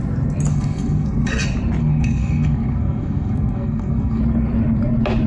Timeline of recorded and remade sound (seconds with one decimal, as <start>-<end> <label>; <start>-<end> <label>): 0.0-0.5 recorded; 0.5-1.3 remade; 1.3-1.8 recorded; 1.8-4.2 remade; 4.2-5.3 recorded